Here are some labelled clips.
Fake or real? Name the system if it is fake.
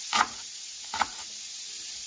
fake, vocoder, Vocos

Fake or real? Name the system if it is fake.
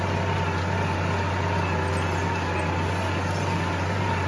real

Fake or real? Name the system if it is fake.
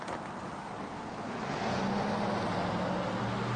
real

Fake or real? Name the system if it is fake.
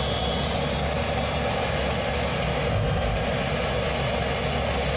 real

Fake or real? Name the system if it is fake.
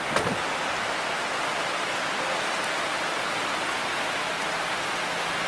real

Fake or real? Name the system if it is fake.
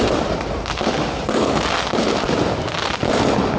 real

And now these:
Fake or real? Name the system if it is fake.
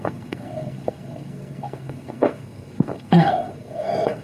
fake, codec, SNAC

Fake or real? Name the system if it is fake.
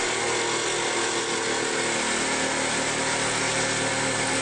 real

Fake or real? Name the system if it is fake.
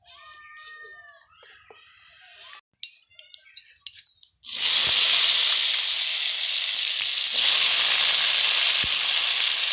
real